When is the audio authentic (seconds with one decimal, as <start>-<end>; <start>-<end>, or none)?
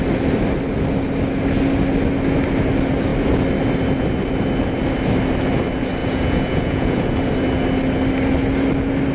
0.0-6.0; 7.3-9.1